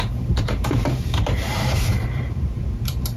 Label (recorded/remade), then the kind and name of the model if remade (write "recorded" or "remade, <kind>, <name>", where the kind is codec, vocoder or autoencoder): remade, vocoder, BigVGAN v2